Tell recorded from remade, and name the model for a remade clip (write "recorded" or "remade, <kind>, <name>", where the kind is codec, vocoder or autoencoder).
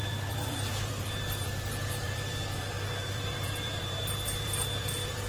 remade, vocoder, BigVGAN v2